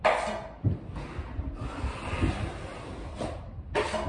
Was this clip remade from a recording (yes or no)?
no